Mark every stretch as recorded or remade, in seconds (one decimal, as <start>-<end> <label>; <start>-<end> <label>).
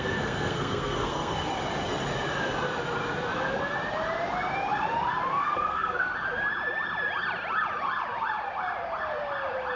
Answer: 0.0-1.5 remade; 1.5-5.3 recorded; 5.3-6.1 remade; 6.1-9.8 recorded